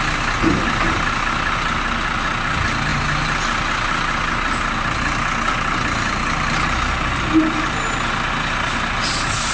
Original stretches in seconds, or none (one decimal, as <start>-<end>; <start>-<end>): 0.0-9.5